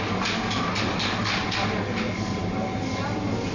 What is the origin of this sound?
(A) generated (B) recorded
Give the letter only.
B